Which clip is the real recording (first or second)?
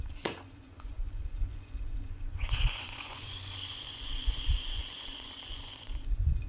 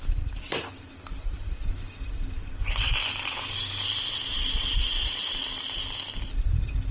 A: second